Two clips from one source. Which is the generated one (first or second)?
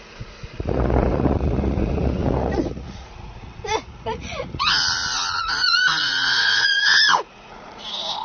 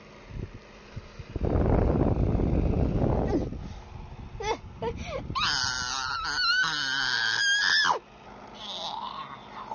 first